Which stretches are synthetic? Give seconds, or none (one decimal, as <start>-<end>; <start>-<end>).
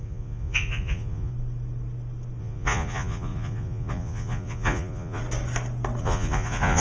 0.0-1.3; 2.4-5.2; 6.0-6.8